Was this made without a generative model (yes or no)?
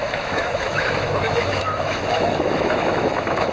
no